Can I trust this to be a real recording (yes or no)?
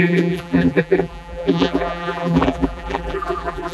no